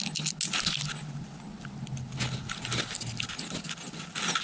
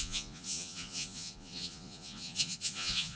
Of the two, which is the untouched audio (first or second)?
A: first